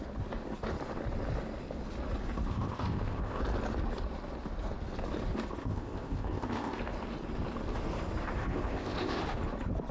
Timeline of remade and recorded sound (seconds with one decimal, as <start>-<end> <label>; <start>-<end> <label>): 0.0-2.5 recorded; 2.5-3.4 remade; 3.4-5.6 recorded; 5.6-6.8 remade; 6.8-8.4 recorded; 8.4-9.2 remade; 9.2-9.9 recorded